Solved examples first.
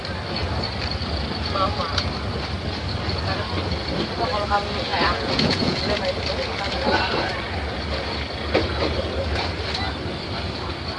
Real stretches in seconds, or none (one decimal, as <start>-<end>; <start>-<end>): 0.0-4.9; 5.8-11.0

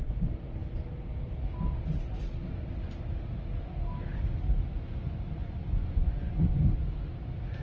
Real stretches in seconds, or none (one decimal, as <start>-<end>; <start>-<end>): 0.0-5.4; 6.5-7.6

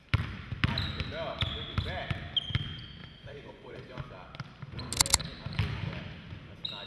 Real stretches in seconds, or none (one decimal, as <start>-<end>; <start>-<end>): 0.0-3.0; 4.0-6.9

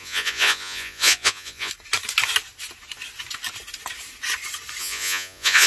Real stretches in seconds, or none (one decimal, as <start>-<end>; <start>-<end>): 1.7-4.8

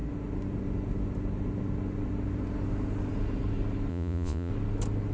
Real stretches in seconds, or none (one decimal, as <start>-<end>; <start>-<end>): 0.0-3.9; 4.5-5.1